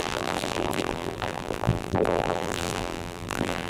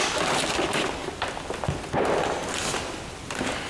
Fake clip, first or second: first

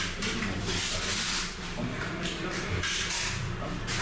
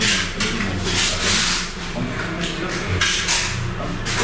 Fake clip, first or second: first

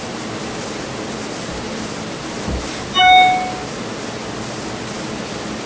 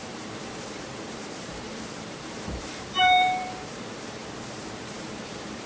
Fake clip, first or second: second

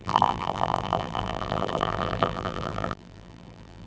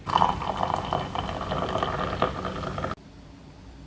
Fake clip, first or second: first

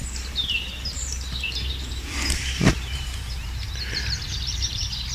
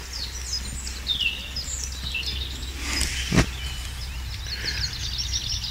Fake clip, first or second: first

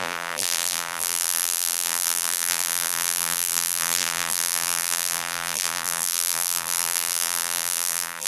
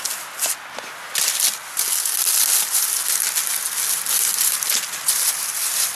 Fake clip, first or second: first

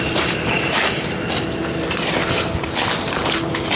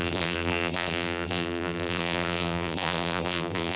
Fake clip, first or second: second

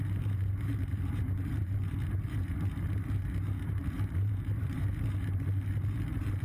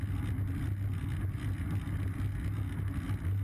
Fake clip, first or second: first